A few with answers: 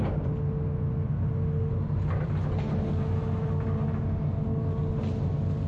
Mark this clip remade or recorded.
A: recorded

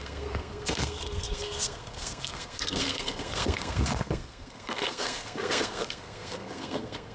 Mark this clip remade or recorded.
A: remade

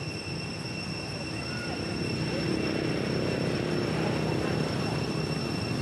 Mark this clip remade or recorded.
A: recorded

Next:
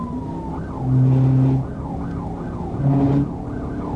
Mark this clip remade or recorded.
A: recorded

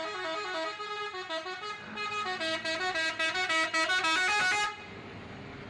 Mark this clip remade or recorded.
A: recorded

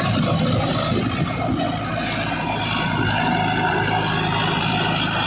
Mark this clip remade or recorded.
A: recorded